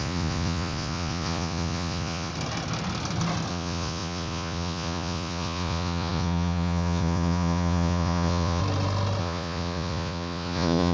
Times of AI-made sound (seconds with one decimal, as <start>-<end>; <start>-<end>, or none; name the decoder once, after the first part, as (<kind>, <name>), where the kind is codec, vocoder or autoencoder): 0.0-2.3 (vocoder, Vocos); 3.5-8.6; 9.2-10.9